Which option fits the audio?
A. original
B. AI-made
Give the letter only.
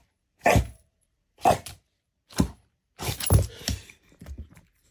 B